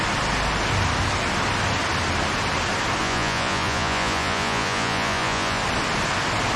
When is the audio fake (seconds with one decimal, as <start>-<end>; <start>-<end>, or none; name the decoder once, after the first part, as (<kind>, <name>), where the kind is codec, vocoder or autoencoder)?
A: 3.0-5.6 (vocoder, Vocos)